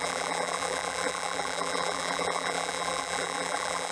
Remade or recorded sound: remade